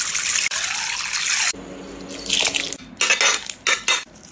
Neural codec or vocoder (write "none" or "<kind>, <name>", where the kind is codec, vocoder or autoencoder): none